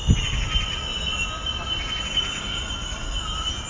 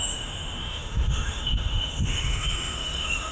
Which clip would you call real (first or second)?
first